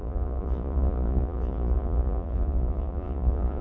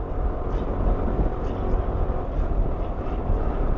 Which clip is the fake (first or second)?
first